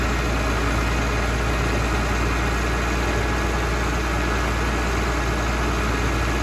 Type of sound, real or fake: real